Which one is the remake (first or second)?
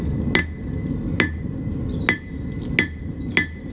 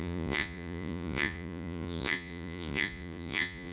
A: second